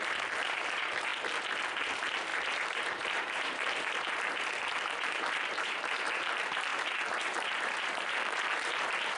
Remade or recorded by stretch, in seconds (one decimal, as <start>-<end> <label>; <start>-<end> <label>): 0.0-1.1 remade; 1.1-1.8 recorded; 1.8-9.2 remade